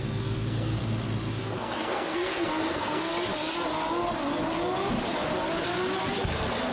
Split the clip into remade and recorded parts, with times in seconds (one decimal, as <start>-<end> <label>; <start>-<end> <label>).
0.0-0.8 remade; 0.8-1.4 recorded; 1.4-3.1 remade; 3.1-6.7 recorded